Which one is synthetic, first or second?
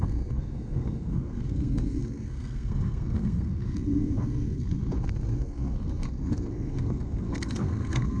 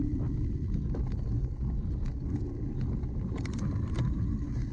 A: first